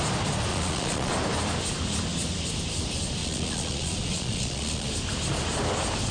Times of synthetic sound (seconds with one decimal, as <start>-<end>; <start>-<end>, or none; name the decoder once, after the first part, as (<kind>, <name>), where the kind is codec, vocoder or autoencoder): 0.5-1.1 (vocoder, Vocos); 3.2-4.9